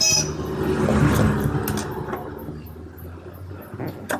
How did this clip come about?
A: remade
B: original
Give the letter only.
B